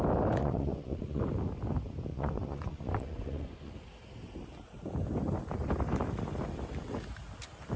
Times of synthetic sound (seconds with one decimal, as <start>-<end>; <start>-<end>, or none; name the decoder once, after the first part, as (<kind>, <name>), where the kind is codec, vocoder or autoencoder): 0.4-1.2 (vocoder, Vocos); 2.1-3.7